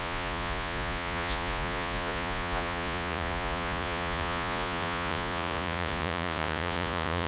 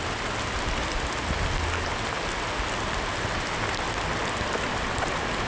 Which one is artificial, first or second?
first